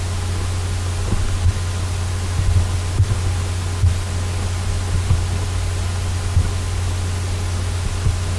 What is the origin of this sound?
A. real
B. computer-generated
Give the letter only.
A